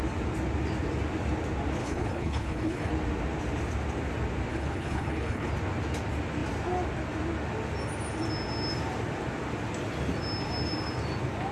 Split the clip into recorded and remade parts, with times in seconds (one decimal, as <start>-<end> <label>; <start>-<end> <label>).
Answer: 0.0-1.8 recorded; 1.8-2.9 remade; 2.9-4.5 recorded; 4.5-5.5 remade; 5.5-11.5 recorded